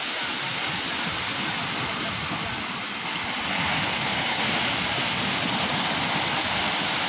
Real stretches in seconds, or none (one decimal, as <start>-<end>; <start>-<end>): 0.0-3.9; 4.4-7.1